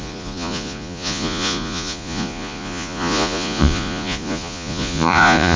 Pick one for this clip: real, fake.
fake